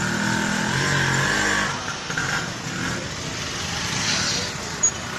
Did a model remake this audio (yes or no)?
no